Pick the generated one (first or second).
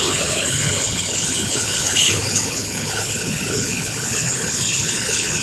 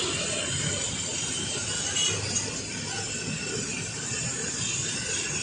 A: first